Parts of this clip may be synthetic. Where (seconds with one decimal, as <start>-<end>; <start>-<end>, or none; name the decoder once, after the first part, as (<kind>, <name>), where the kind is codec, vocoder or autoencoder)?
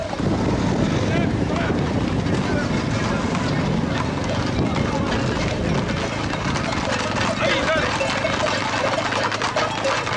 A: none